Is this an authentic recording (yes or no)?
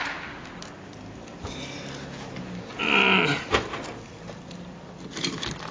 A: yes